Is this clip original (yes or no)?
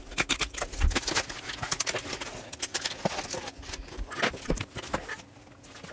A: yes